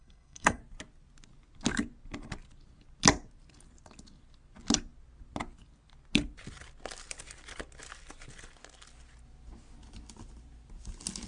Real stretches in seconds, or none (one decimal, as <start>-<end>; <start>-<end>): 0.6-11.3